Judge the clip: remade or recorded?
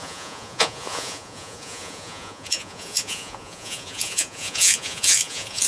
remade